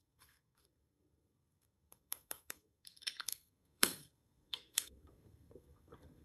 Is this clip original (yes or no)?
no